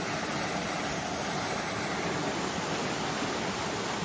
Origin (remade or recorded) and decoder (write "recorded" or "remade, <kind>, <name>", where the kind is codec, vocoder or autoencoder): recorded